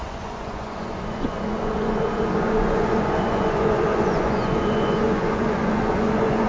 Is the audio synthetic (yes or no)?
yes